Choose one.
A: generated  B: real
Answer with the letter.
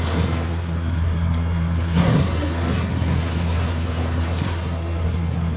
A